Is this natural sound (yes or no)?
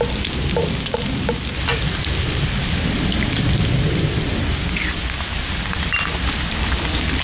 yes